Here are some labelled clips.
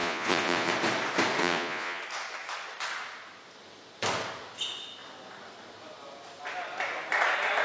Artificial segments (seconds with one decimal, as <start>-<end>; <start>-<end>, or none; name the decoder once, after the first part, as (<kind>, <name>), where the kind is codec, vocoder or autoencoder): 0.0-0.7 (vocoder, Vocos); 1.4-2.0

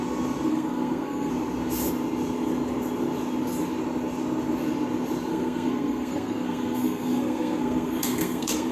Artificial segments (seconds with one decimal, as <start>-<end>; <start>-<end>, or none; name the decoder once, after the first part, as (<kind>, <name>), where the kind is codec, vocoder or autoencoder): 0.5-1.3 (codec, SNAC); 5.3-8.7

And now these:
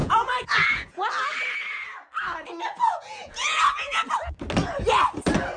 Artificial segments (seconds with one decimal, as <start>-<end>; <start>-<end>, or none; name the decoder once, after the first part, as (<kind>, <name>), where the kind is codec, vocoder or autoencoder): 0.0-1.1 (vocoder, Vocos); 2.7-4.0

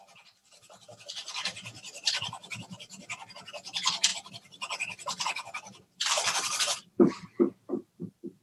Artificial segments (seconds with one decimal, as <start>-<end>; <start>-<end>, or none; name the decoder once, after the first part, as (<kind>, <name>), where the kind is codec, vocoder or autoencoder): 1.2-3.4 (vocoder, BigVGAN v2); 4.1-8.4

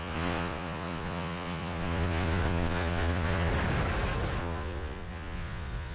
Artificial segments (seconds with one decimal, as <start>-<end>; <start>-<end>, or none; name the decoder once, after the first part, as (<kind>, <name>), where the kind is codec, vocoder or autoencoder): 0.0-3.5 (vocoder, Vocos); 4.4-5.9

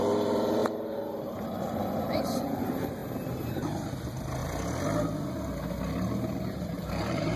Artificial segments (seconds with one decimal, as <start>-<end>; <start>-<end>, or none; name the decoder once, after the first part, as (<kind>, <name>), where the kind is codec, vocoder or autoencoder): 0.0-4.4 (vocoder, BigVGAN v2); 6.5-7.4

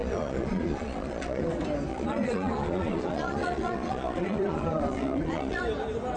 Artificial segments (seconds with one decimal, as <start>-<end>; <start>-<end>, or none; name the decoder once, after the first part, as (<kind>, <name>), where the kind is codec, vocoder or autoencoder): 0.0-1.5 (vocoder, Vocos); 1.9-5.6

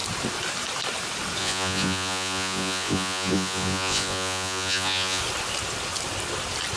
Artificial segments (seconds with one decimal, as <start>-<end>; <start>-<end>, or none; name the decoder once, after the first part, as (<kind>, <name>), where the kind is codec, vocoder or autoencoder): 1.4-5.2 (vocoder, Vocos)